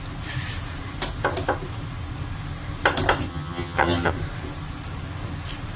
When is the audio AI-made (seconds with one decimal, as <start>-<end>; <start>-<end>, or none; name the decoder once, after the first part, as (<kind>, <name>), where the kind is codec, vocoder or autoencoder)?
3.3-4.1 (vocoder, HiFi-GAN)